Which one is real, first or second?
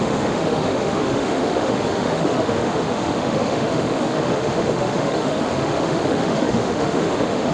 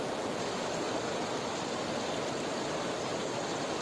second